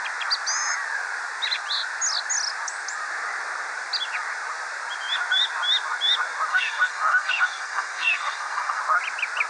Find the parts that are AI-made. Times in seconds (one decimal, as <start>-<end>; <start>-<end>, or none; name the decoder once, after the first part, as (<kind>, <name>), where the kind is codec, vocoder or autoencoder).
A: 6.5-8.8 (codec, SNAC)